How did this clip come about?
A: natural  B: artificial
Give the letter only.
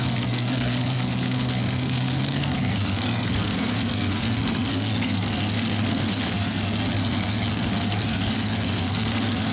B